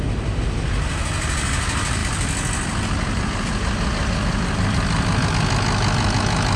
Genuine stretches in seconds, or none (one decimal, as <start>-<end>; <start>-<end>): 0.0-6.6